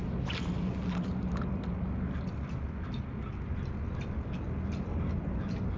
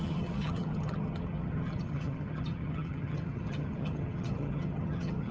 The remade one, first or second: second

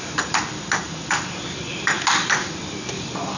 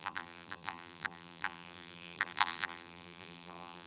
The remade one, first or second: second